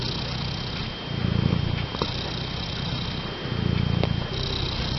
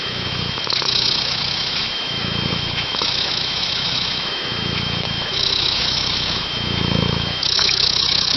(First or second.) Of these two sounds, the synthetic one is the second